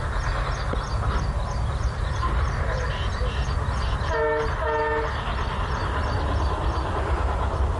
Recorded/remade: recorded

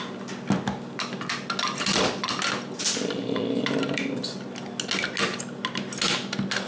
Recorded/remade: recorded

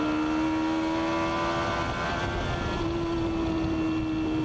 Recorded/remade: recorded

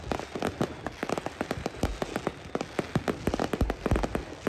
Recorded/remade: recorded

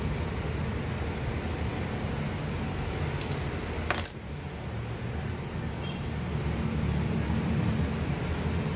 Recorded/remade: recorded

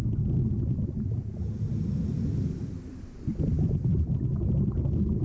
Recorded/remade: recorded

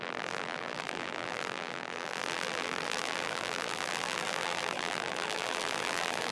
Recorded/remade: remade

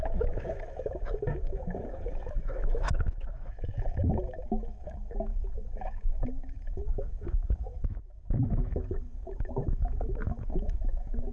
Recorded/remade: remade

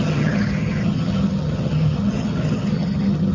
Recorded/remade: remade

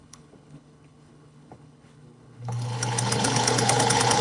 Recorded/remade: remade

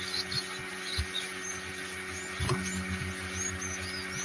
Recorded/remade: recorded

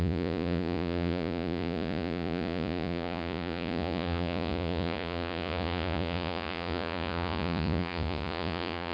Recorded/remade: remade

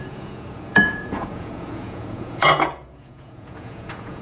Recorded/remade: remade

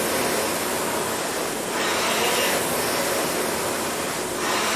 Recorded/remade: recorded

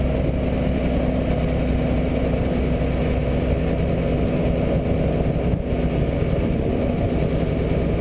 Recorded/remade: recorded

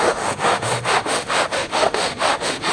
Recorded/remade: remade